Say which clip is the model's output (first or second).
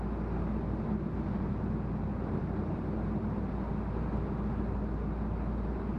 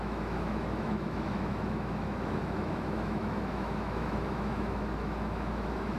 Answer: second